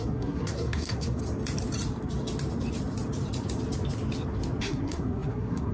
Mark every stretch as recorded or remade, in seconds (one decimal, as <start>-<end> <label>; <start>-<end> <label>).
0.0-1.2 remade; 1.2-4.6 recorded; 4.6-5.7 remade